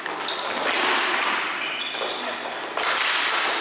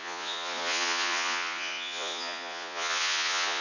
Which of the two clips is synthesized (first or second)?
second